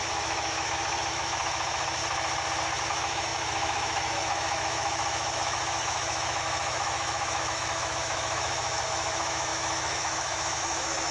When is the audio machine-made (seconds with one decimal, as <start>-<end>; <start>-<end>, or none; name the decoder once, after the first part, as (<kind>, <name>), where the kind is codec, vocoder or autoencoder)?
0.0-2.0 (autoencoder, DAC-VAE); 2.8-11.1